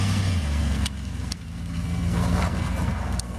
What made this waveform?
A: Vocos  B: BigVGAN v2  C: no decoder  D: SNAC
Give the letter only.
D